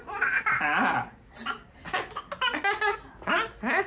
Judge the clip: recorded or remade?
recorded